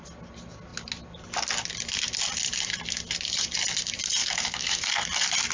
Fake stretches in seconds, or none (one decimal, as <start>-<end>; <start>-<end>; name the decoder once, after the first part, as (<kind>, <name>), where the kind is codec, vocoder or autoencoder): 4.2-4.9 (autoencoder, DAC-VAE)